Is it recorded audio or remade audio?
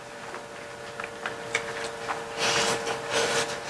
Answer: recorded